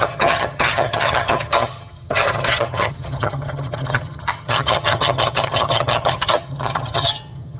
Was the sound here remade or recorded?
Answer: remade